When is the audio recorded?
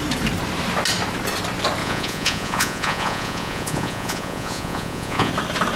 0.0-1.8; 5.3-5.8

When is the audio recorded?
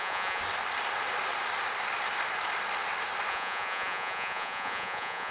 0.4-3.3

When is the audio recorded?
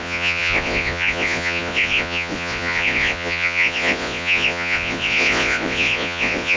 none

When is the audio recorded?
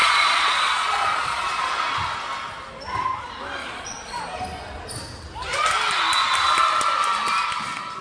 1.7-3.6; 4.2-8.0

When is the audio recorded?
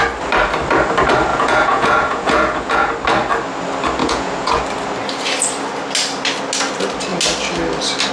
0.0-1.3; 2.9-4.0; 4.6-8.1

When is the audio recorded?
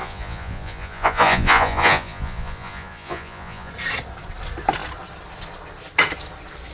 3.7-6.7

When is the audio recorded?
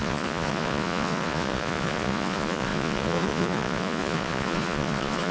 none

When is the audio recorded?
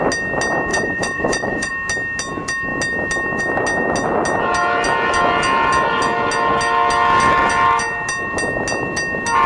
0.0-0.7; 1.7-9.5